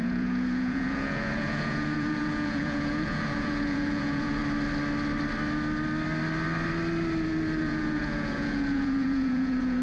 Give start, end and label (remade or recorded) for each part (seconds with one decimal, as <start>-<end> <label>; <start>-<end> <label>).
0.0-4.4 remade; 4.4-7.6 recorded; 7.6-9.8 remade